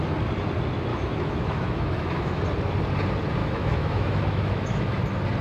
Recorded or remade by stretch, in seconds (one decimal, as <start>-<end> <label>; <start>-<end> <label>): 0.0-0.9 recorded; 0.9-2.4 remade; 2.4-3.4 recorded; 3.4-5.0 remade; 5.0-5.4 recorded